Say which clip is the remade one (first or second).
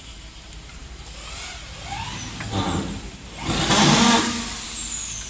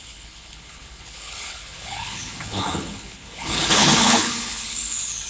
second